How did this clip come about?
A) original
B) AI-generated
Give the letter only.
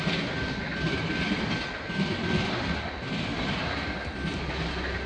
A